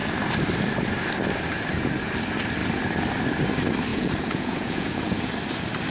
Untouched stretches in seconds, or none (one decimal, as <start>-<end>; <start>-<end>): 0.0-3.9; 5.3-5.9